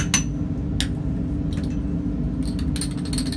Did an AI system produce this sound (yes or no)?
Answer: no